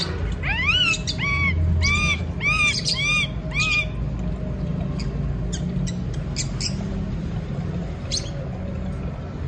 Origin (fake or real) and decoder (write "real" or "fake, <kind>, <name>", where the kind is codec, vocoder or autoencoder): real